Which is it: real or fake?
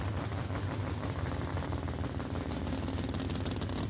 real